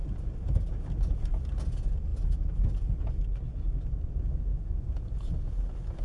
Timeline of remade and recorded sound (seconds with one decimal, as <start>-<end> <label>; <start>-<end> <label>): 0.0-4.5 recorded; 4.5-5.5 remade; 5.5-6.0 recorded